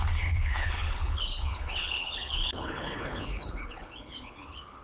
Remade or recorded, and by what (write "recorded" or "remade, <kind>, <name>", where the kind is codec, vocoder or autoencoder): remade, codec, HILCodec